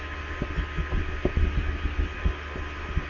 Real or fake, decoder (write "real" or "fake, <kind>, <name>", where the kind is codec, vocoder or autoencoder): real